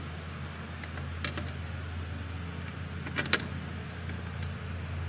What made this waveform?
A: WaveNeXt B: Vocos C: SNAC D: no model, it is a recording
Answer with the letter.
D